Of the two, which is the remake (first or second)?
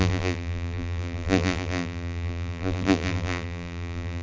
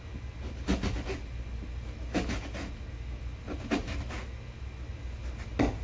first